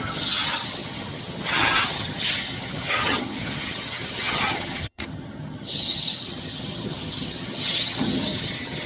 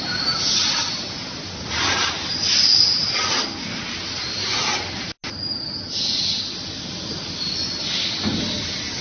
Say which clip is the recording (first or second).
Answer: second